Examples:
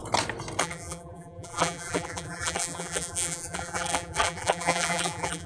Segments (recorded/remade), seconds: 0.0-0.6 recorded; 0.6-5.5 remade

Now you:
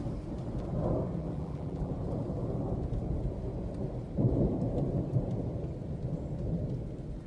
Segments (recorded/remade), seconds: 0.0-1.2 recorded; 1.2-1.9 remade; 1.9-7.3 recorded

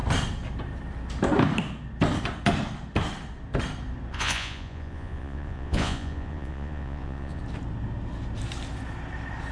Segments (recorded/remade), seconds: 0.0-4.1 recorded; 4.1-7.4 remade; 7.4-9.5 recorded

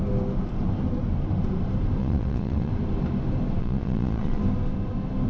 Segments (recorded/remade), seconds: 0.0-2.0 recorded; 2.0-2.7 remade; 2.7-3.6 recorded; 3.6-4.4 remade; 4.4-5.3 recorded

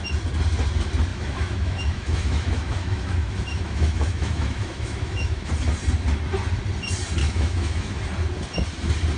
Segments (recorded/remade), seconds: 0.0-1.1 recorded; 1.1-5.5 remade; 5.5-7.2 recorded; 7.2-8.0 remade; 8.0-9.2 recorded

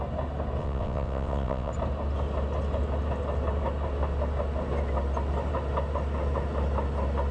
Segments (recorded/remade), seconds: 0.0-0.6 recorded; 0.6-1.7 remade; 1.7-7.3 recorded

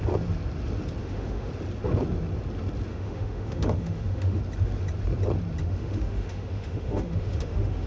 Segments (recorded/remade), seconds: 0.0-1.0 recorded; 1.0-1.5 remade; 1.5-2.9 recorded; 2.9-4.4 remade; 4.4-5.6 recorded; 5.6-7.9 remade

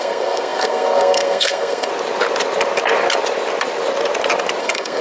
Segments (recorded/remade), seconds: 0.0-1.9 remade; 1.9-4.6 recorded; 4.6-5.0 remade